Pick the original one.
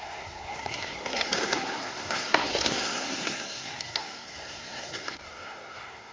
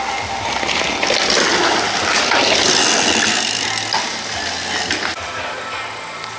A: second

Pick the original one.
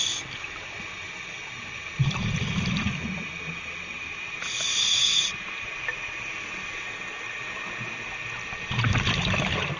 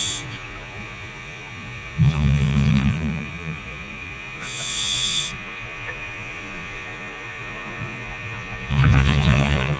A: first